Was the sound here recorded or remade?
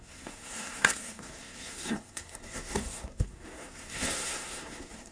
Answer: remade